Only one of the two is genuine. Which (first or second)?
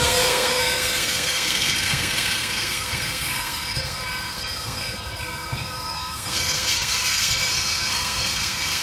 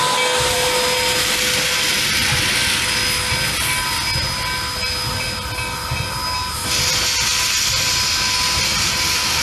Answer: second